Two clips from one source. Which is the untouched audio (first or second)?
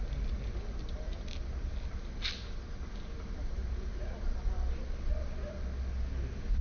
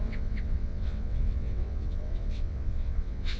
first